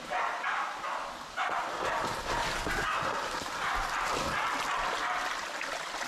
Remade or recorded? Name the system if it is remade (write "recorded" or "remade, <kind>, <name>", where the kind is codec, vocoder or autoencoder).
recorded